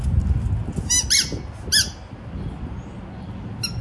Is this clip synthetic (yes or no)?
no